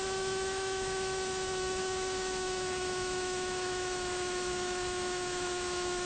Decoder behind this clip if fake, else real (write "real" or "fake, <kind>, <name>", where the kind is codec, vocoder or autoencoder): fake, autoencoder, DAC-VAE